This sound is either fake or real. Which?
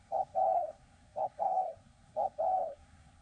fake